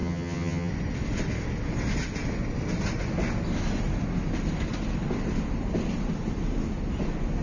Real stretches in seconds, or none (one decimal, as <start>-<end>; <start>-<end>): 0.7-7.4